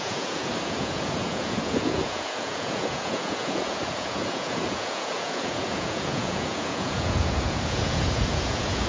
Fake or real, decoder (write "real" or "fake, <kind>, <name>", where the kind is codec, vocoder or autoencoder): fake, vocoder, Vocos